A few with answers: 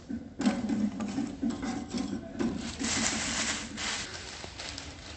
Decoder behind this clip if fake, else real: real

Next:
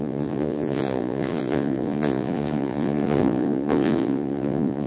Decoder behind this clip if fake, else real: fake, vocoder, Vocos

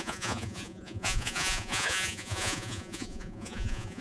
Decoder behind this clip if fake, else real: fake, vocoder, Vocos